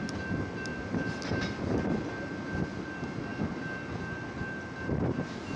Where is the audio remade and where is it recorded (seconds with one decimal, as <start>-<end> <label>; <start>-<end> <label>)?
0.0-5.6 recorded